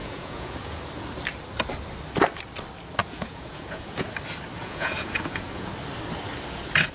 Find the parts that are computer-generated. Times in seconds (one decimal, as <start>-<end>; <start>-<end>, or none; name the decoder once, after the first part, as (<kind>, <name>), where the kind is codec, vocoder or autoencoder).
0.0-0.8 (vocoder, Vocos); 3.0-4.1; 4.6-5.7